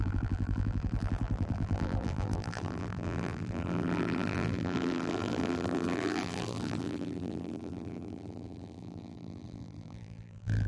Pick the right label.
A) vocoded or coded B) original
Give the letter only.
A